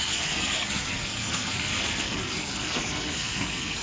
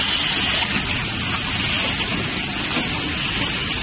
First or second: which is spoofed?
first